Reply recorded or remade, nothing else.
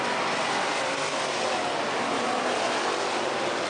recorded